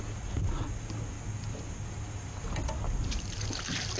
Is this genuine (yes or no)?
yes